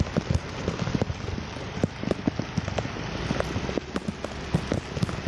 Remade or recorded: recorded